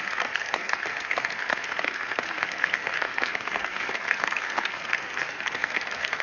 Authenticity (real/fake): fake